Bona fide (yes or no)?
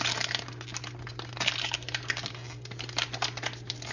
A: yes